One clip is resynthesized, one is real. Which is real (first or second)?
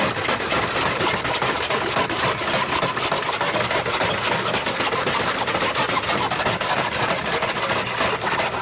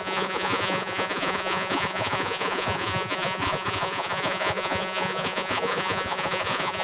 first